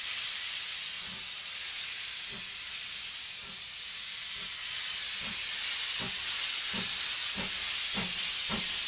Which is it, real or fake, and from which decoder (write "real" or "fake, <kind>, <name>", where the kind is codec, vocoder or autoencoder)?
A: real